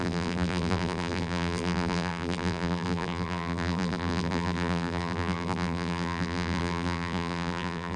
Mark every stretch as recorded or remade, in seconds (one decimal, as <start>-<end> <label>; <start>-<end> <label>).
0.0-8.0 remade